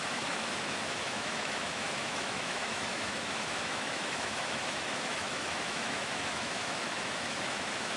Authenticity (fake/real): fake